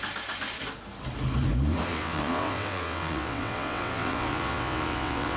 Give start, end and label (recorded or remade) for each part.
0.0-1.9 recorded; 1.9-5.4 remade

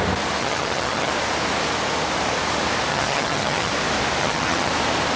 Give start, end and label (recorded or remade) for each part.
0.0-0.4 recorded; 0.4-1.1 remade; 1.1-2.9 recorded; 2.9-3.7 remade; 3.7-4.2 recorded; 4.2-4.7 remade; 4.7-5.2 recorded

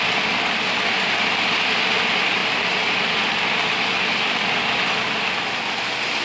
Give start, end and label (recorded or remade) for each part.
0.0-6.2 recorded